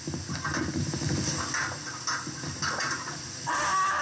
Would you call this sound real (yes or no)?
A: yes